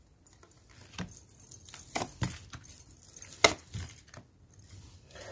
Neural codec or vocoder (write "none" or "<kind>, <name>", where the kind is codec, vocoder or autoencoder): none